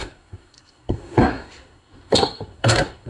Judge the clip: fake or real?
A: fake